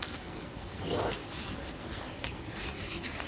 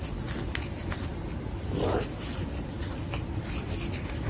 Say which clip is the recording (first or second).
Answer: second